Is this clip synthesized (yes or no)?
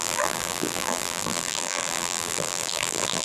yes